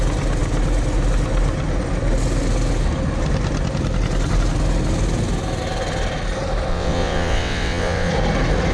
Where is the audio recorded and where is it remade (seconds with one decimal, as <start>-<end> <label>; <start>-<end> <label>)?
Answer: 0.0-6.7 recorded; 6.7-8.1 remade; 8.1-8.7 recorded